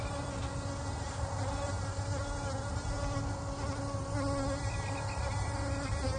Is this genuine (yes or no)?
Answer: yes